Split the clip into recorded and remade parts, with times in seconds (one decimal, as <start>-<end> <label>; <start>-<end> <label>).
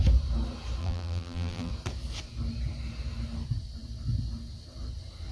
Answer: 0.0-0.8 recorded; 0.8-1.7 remade; 1.7-5.3 recorded